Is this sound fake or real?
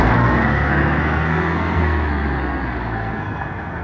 fake